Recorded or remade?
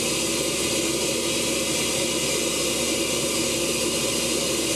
recorded